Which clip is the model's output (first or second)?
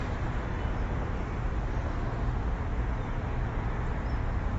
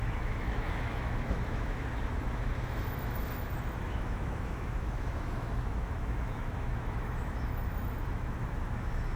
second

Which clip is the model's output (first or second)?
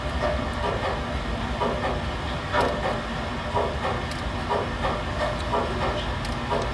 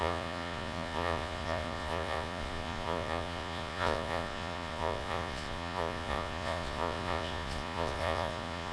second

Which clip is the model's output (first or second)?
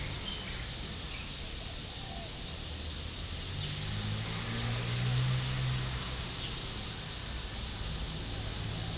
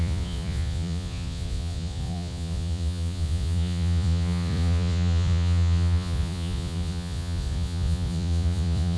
second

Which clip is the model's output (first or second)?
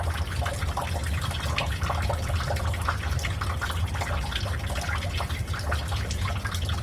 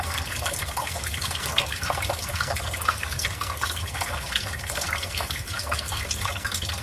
second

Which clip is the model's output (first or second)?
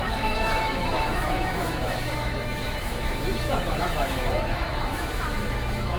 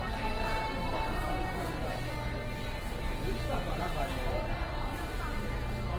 first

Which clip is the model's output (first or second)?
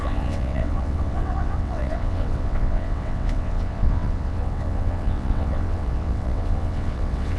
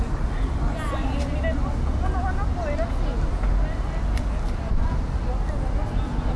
first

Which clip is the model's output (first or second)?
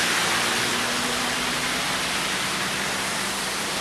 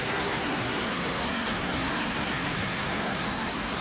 second